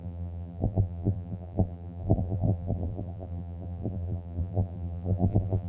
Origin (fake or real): fake